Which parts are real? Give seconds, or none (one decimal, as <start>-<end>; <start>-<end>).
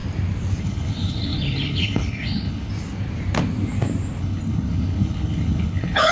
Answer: 0.0-0.6; 2.7-4.2